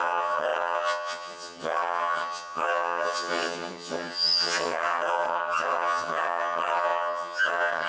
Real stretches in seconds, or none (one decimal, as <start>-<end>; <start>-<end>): none